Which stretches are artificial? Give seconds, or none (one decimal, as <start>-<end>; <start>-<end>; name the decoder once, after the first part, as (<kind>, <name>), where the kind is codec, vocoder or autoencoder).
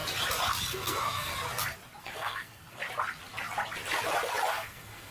0.7-1.3 (codec, SNAC); 2.0-2.8; 4.5-5.1